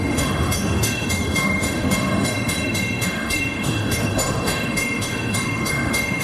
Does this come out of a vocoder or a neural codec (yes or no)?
yes